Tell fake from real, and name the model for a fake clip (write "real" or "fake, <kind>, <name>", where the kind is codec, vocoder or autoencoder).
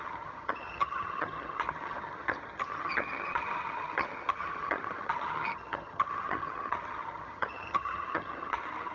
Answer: fake, vocoder, HiFi-GAN